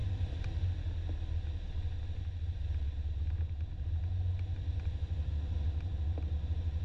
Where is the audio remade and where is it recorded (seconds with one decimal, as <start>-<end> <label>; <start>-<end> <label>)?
0.0-6.8 recorded

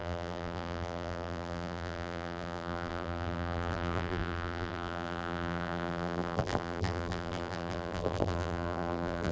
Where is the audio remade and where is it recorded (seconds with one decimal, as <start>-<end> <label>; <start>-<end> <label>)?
0.0-9.3 remade